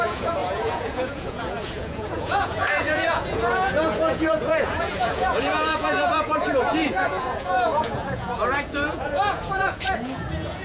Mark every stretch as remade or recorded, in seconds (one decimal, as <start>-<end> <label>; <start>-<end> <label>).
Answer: 0.0-10.6 remade